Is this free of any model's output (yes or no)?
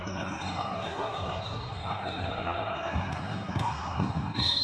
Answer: no